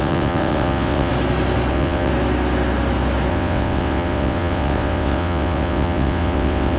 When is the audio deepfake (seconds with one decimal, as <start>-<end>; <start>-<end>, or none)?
0.0-1.1; 1.7-2.1; 3.3-6.8